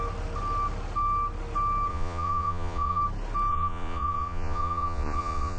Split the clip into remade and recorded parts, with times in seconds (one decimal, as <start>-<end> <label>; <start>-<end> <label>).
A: 0.0-1.9 recorded; 1.9-3.0 remade; 3.0-3.5 recorded; 3.5-5.6 remade